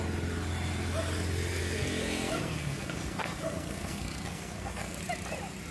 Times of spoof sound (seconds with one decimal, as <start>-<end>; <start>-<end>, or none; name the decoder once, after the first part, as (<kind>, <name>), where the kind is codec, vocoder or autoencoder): 1.6-5.0 (codec, SNAC)